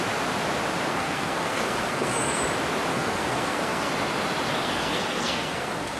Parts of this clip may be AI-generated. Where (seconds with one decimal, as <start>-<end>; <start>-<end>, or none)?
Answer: 0.9-2.4; 2.9-3.9; 4.6-6.0